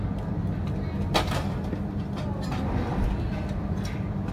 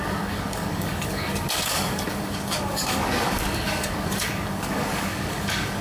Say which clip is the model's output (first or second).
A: second